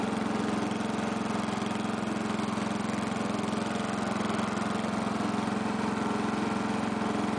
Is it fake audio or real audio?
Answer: real